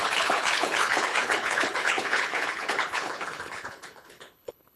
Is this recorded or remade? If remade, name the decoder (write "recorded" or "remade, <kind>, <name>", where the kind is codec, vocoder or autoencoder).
remade, codec, HILCodec